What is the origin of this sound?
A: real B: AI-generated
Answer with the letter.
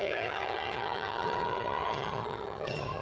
B